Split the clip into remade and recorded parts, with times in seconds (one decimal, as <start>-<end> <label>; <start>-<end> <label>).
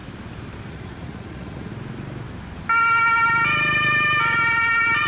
0.0-0.7 recorded; 0.7-1.7 remade; 1.7-5.1 recorded